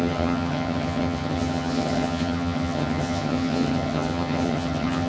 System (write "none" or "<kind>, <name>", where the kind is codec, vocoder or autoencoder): vocoder, HiFi-GAN